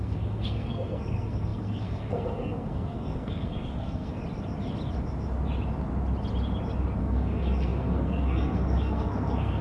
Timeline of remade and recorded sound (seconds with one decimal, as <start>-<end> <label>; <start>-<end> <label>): 0.0-4.2 remade; 4.2-7.0 recorded; 7.0-9.6 remade